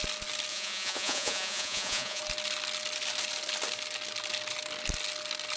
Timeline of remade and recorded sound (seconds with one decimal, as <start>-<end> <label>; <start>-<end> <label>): 0.0-0.5 recorded; 0.5-2.2 remade; 2.2-5.6 recorded